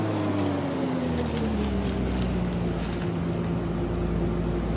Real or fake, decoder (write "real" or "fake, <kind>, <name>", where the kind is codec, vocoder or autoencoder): real